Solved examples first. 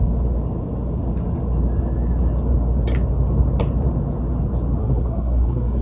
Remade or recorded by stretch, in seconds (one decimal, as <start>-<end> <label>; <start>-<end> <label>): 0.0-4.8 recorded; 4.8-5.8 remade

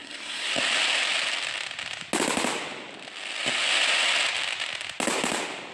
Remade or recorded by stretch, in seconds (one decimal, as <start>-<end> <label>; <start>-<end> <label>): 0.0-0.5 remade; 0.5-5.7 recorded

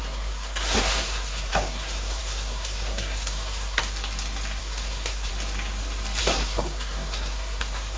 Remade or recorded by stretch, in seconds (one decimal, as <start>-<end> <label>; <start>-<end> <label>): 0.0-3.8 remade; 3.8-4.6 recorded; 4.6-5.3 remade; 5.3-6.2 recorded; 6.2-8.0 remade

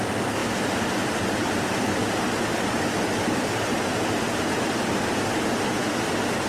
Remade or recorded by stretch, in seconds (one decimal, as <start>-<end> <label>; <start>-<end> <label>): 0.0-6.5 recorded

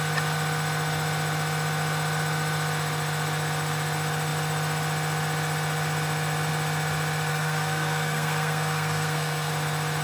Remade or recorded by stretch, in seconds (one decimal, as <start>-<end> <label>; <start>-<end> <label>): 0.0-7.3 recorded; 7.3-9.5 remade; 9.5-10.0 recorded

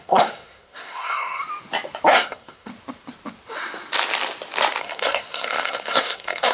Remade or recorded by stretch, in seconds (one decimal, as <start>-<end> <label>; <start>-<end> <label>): 0.0-1.4 remade; 1.4-2.1 recorded; 2.1-2.7 remade; 2.7-4.8 recorded; 4.8-6.5 remade

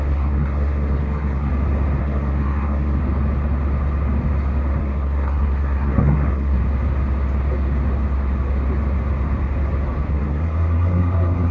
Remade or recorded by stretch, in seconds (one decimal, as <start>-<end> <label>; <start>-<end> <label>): 0.0-1.5 remade; 1.5-2.0 recorded; 2.0-3.0 remade; 3.0-4.8 recorded; 4.8-6.6 remade; 6.6-10.1 recorded; 10.1-11.5 remade